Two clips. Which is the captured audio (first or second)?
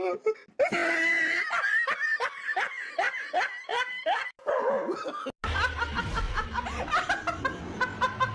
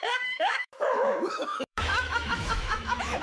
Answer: first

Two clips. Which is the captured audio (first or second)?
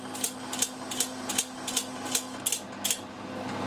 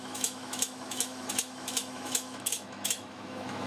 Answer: first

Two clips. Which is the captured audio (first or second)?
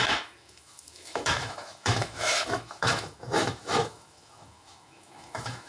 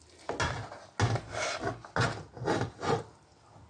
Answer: second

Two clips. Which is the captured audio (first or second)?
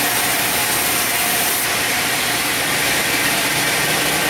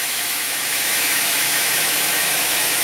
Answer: first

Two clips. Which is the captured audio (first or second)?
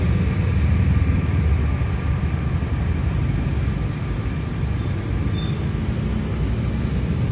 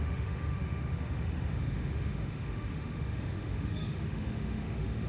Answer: first